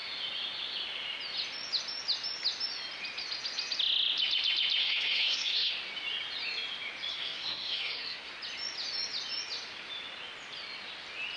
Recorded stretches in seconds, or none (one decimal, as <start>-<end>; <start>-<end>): 0.0-4.8; 5.7-7.1; 8.3-11.4